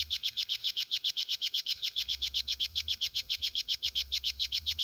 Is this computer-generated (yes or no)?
yes